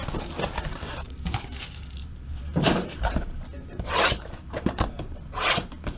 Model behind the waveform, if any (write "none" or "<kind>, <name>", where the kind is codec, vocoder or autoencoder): vocoder, BigVGAN v2